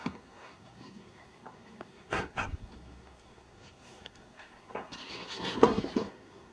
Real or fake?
fake